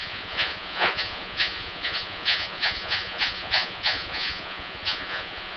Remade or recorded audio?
remade